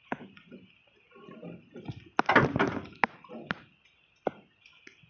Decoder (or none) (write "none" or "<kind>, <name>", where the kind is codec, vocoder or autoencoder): none